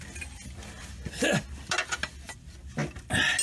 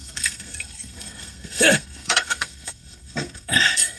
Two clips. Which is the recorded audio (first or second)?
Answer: first